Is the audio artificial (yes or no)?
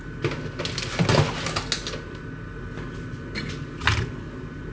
no